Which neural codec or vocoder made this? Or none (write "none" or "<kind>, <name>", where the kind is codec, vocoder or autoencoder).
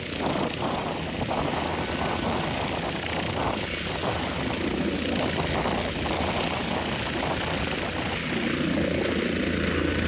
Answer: none